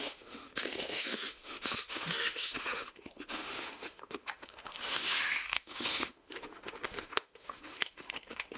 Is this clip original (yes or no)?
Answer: no